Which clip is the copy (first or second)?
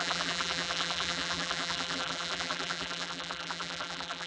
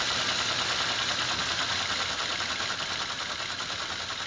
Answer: first